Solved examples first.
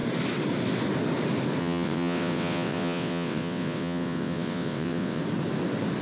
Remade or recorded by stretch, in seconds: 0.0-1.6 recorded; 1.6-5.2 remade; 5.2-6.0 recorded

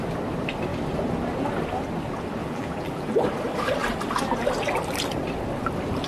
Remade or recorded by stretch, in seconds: 0.0-2.4 recorded; 2.4-3.1 remade; 3.1-6.1 recorded

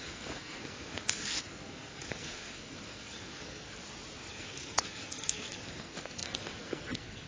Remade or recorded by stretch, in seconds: 0.0-3.8 remade; 3.8-4.3 recorded; 4.3-7.3 remade